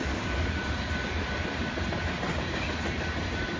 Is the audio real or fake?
fake